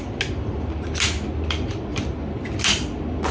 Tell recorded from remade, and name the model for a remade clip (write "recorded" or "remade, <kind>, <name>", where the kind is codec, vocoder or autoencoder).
recorded